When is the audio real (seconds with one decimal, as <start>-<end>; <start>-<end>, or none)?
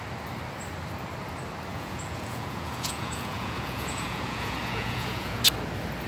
0.0-1.7; 5.4-6.1